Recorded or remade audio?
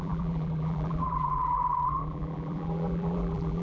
remade